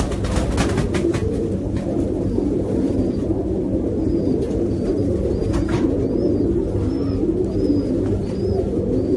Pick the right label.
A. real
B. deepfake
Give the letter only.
A